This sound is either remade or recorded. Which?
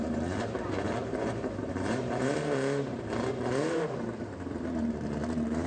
remade